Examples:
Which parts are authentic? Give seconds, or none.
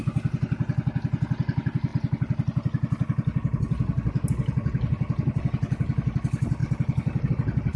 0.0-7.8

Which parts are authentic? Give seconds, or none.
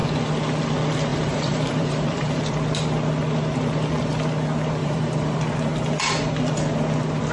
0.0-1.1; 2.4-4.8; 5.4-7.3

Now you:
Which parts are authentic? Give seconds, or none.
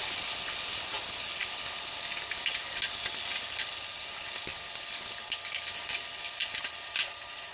0.0-4.5; 5.2-6.4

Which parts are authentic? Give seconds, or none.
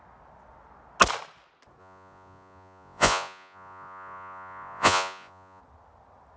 0.0-1.8; 5.6-6.4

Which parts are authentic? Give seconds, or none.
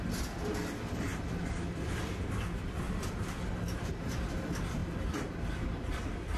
0.0-1.1; 3.2-4.8; 5.5-6.4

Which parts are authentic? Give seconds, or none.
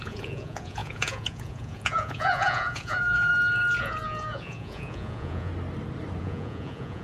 3.3-3.8; 5.5-6.2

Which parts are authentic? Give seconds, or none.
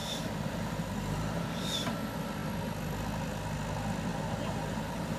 1.4-4.1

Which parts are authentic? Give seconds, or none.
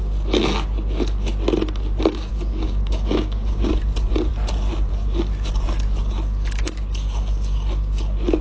0.0-2.3; 3.7-8.4